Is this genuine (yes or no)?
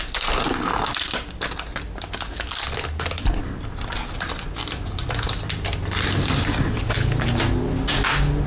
yes